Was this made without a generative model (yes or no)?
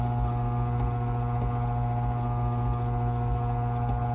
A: yes